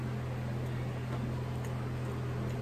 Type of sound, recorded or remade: recorded